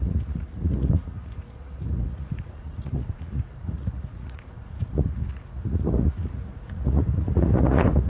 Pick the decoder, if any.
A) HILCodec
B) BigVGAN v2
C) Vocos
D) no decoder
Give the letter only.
C